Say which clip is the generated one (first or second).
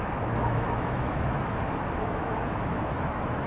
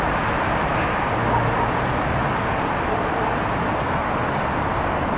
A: first